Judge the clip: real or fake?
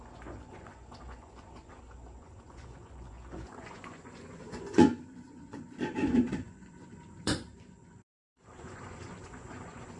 fake